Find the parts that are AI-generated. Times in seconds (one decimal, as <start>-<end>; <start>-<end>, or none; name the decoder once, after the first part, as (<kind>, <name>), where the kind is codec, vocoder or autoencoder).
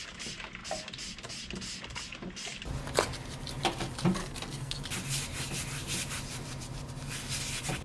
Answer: 4.2-4.8 (codec, SNAC)